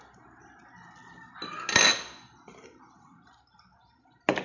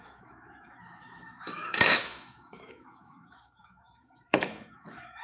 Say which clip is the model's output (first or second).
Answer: second